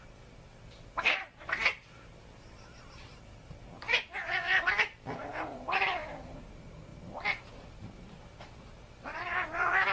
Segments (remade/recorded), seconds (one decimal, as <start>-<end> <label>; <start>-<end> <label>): 0.0-4.2 remade; 4.2-5.2 recorded; 5.2-6.9 remade; 6.9-7.4 recorded; 7.4-9.9 remade